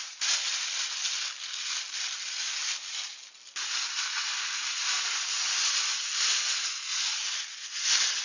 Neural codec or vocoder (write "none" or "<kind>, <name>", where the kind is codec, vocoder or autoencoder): none